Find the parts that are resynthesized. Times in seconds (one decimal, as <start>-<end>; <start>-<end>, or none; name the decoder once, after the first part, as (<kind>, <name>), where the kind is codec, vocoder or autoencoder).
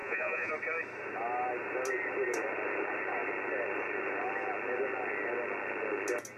0.0-0.5 (vocoder, Vocos)